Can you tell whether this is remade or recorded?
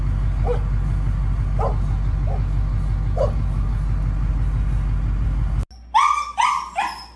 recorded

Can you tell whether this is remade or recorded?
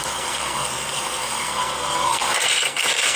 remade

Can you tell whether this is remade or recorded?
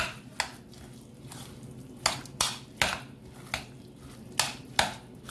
recorded